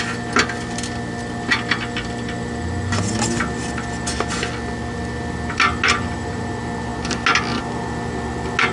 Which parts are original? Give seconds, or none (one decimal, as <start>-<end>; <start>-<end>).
0.0-8.7